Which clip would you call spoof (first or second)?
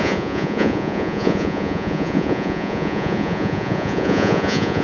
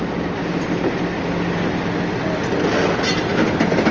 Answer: first